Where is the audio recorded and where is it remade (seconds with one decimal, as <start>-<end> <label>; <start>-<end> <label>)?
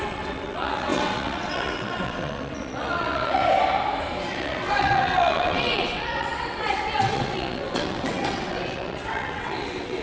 0.0-3.4 remade; 3.4-4.3 recorded; 4.3-10.0 remade